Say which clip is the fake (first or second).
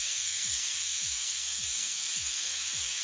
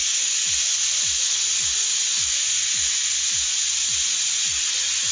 first